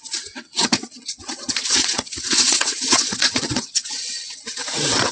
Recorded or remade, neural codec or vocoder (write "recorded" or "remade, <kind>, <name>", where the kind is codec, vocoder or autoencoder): remade, vocoder, WaveNeXt